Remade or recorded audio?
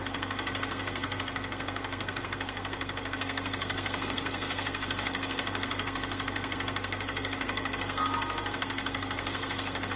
remade